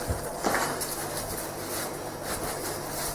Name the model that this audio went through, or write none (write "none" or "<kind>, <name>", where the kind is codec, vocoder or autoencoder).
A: none